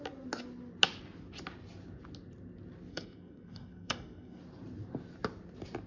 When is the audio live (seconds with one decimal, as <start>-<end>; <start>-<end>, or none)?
0.0-2.9; 4.4-5.9